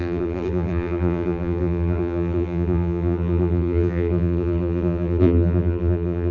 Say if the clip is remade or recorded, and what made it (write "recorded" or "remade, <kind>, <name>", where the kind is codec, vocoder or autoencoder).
remade, vocoder, BigVGAN v2